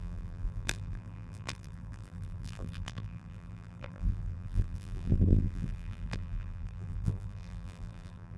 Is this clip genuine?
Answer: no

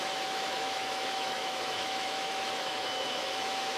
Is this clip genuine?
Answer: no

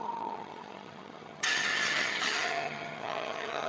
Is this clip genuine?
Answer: no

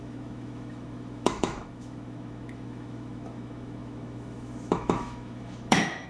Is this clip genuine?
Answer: no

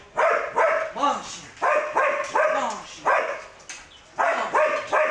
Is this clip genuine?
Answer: yes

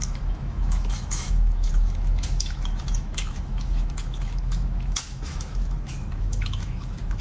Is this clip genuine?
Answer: no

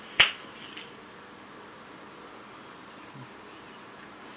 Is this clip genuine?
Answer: yes